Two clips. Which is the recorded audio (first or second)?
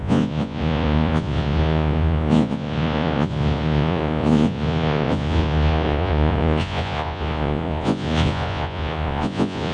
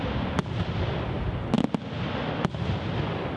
second